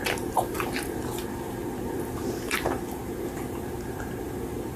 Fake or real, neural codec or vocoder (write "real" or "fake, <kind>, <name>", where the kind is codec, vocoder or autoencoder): fake, vocoder, BigVGAN v2